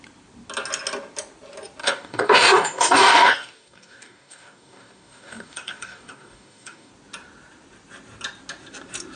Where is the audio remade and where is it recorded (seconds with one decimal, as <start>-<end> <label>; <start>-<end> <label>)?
0.0-1.8 recorded; 1.8-6.9 remade; 6.9-9.2 recorded